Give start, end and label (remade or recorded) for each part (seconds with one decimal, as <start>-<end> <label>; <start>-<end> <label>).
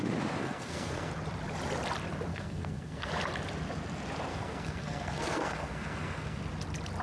0.0-0.4 recorded; 0.4-1.1 remade; 1.1-2.3 recorded; 2.3-3.1 remade; 3.1-4.3 recorded; 4.3-6.4 remade; 6.4-7.0 recorded